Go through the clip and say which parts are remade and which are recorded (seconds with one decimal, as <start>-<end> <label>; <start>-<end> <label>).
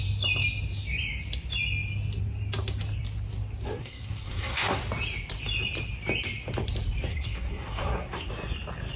0.0-3.8 recorded; 3.8-4.8 remade; 4.8-7.1 recorded; 7.1-8.3 remade; 8.3-9.0 recorded